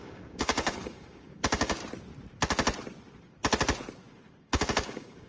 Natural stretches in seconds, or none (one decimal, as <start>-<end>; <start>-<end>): 1.8-4.4